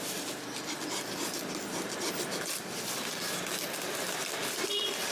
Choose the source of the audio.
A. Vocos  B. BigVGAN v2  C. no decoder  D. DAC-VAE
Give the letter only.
C